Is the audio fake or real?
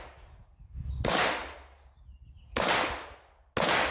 real